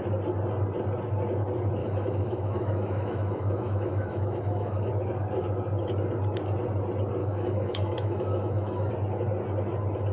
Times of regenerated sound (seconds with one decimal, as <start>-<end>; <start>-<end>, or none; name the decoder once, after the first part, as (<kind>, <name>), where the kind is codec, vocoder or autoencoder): 1.8-4.9 (autoencoder, DAC-VAE); 7.2-8.9